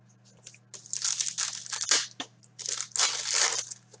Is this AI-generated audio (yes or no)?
no